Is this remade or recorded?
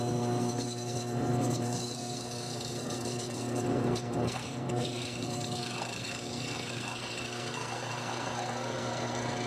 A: remade